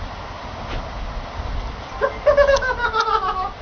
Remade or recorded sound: recorded